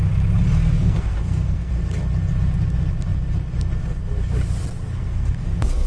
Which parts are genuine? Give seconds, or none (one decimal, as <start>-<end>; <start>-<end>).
0.0-0.7; 1.7-4.9